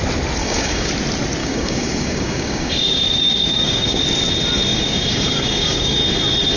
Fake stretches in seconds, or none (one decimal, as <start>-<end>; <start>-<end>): 0.4-0.9; 1.4-4.0; 4.7-6.0